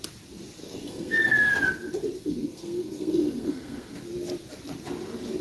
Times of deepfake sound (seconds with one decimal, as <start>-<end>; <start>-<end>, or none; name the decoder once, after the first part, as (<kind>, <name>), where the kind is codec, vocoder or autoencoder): 0.6-1.5 (codec, SNAC); 2.2-3.9